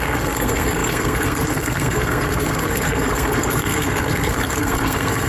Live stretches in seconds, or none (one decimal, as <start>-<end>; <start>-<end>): none